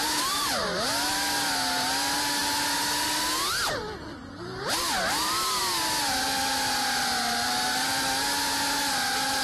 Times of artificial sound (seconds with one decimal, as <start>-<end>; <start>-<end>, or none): none